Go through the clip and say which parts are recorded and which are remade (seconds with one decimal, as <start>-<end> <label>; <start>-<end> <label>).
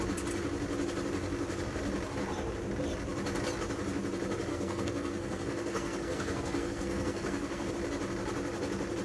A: 0.0-4.5 recorded; 4.5-7.7 remade; 7.7-9.0 recorded